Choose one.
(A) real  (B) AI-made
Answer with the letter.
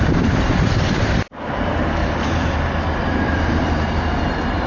B